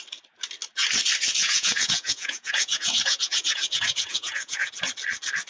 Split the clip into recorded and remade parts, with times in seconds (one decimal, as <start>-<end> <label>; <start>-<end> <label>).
0.0-1.4 recorded; 1.4-4.7 remade; 4.7-5.5 recorded